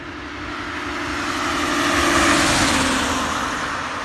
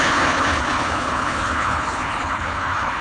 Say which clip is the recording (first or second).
first